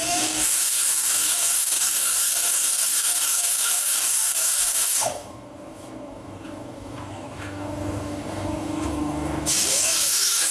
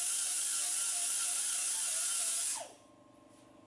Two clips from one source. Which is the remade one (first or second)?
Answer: first